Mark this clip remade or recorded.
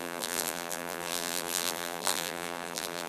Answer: remade